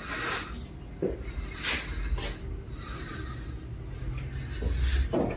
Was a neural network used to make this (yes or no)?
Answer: no